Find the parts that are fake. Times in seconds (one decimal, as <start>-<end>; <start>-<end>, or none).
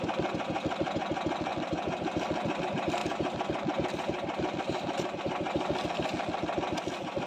1.5-2.6; 3.0-5.2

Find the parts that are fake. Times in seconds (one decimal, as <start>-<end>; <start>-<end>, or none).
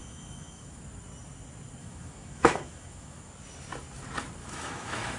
0.0-0.8; 1.8-3.3; 4.4-5.2